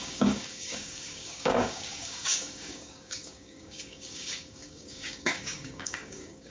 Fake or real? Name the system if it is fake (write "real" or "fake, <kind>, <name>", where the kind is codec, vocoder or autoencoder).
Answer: fake, codec, DAC